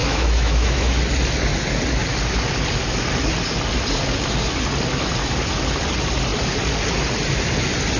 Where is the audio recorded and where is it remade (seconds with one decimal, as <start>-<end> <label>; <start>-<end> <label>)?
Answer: 0.0-1.0 remade; 1.0-8.0 recorded